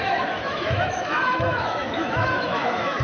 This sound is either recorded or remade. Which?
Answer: remade